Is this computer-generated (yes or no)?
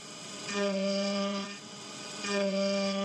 yes